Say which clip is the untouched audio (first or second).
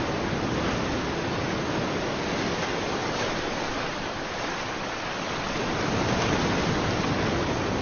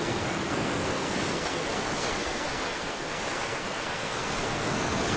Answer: first